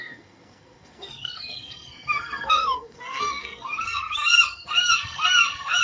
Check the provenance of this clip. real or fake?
fake